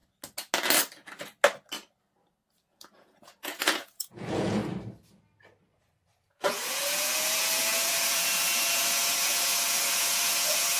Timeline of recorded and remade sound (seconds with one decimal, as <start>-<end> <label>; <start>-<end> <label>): 0.0-2.6 recorded; 2.6-4.6 remade; 4.6-6.2 recorded; 6.2-10.8 remade